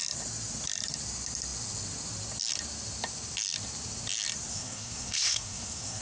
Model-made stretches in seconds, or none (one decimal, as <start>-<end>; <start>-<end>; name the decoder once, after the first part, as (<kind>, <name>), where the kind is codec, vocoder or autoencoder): 4.5-6.0 (codec, SNAC)